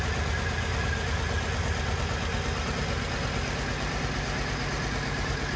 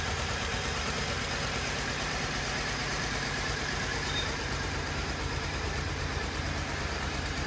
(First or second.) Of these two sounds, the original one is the first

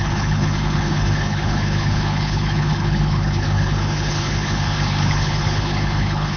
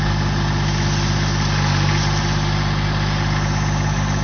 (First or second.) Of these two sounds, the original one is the second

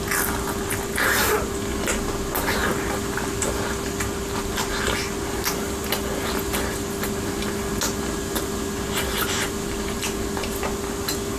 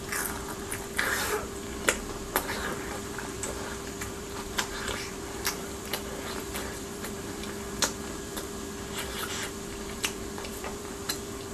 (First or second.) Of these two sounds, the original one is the first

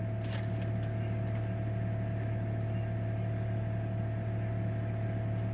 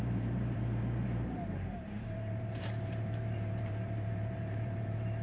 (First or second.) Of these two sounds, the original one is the first